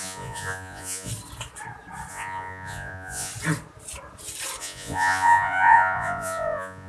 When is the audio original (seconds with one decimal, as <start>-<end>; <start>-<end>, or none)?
1.1-2.1; 3.3-4.6